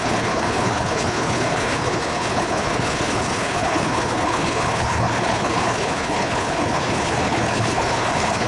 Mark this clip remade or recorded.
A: remade